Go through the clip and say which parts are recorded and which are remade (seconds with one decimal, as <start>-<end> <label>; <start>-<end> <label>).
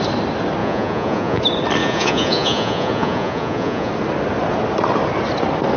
0.0-0.6 recorded; 0.6-1.4 remade; 1.4-1.8 recorded; 1.8-3.9 remade; 3.9-5.8 recorded